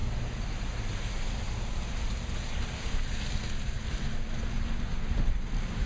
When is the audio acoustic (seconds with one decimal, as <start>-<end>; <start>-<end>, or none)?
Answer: 0.7-5.9